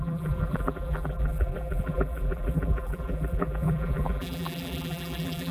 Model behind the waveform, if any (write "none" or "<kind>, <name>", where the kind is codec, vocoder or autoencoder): vocoder, BigVGAN v2